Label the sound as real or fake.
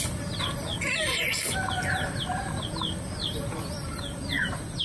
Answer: real